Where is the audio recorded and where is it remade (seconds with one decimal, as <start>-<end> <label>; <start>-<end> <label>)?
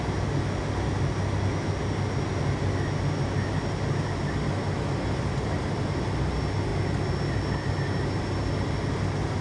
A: 0.0-9.4 recorded